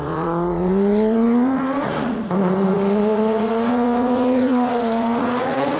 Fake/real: fake